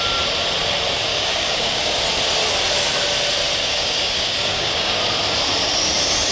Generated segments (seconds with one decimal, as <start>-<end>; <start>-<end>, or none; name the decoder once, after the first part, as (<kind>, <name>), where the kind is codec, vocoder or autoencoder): 1.1-2.0 (codec, DAC); 3.6-5.0